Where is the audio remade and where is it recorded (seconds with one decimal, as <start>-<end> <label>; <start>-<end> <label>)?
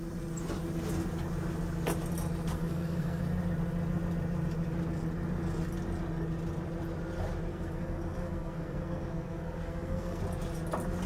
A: 0.0-2.5 recorded; 2.5-3.2 remade; 3.2-7.5 recorded; 7.5-10.2 remade; 10.2-11.1 recorded